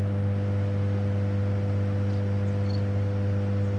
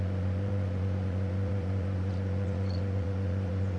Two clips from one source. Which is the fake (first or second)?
second